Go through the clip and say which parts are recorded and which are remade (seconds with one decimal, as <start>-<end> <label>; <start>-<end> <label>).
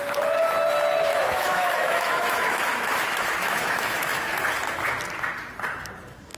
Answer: 0.0-1.1 recorded; 1.1-4.3 remade; 4.3-6.4 recorded